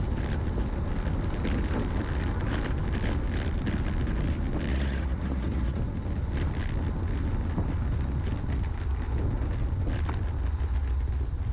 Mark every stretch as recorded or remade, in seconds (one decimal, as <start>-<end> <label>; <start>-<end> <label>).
0.0-4.7 recorded; 4.7-5.8 remade; 5.8-11.5 recorded